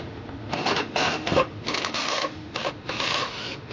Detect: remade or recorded remade